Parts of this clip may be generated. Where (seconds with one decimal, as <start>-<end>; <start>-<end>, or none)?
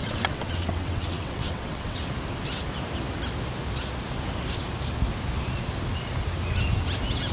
0.0-2.0